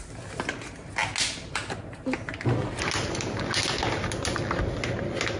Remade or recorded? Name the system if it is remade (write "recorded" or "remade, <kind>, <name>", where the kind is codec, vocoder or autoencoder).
recorded